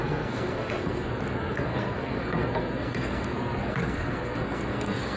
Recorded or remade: remade